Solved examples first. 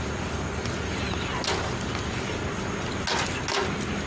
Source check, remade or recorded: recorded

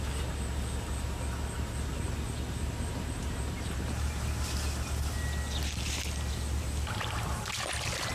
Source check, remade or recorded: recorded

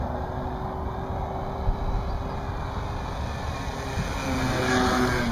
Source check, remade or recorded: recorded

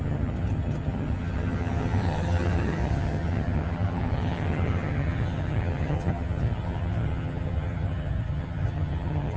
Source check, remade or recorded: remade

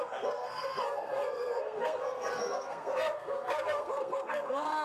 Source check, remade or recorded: remade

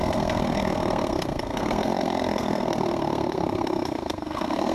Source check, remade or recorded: remade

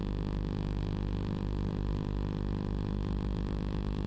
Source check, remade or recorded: recorded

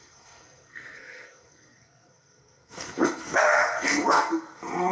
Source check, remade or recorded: remade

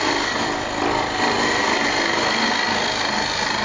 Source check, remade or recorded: recorded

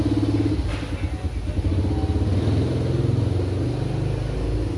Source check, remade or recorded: recorded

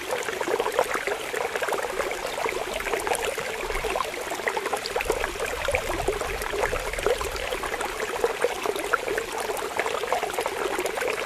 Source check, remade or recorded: recorded